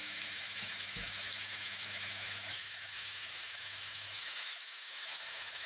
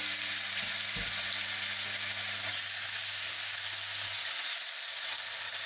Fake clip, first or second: first